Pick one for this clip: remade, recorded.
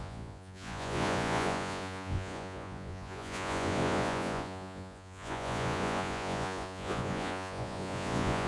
remade